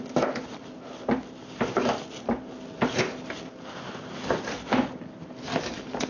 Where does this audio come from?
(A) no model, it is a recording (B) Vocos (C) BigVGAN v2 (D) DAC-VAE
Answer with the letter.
A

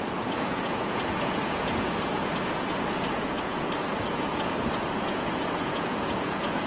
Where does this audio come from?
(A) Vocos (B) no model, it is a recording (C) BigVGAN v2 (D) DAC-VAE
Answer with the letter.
A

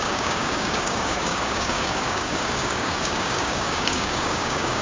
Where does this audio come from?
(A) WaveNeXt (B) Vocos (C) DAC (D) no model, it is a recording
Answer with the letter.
C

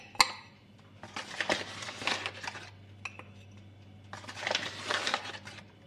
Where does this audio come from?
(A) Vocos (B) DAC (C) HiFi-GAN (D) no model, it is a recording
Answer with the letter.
D